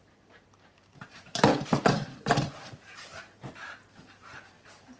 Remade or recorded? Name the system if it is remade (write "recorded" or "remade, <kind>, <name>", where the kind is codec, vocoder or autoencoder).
remade, vocoder, BigVGAN v2